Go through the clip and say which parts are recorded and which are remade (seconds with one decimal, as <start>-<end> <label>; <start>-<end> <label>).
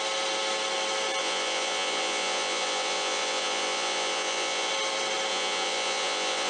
0.0-1.2 recorded; 1.2-4.7 remade; 4.7-5.3 recorded; 5.3-6.5 remade